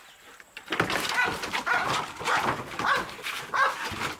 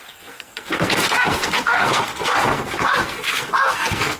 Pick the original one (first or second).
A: first